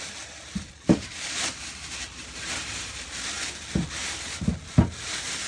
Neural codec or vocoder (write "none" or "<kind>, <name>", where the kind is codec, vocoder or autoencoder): none